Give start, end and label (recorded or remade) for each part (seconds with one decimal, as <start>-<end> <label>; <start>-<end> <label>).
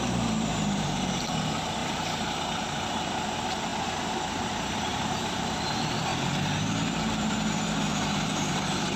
0.0-3.7 remade; 3.7-4.3 recorded; 4.3-6.1 remade; 6.1-6.7 recorded; 6.7-9.0 remade